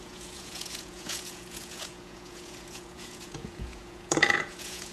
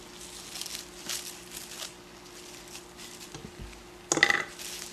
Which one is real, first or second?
second